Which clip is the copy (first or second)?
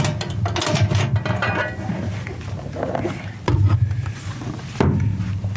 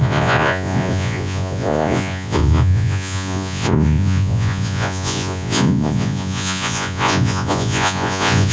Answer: second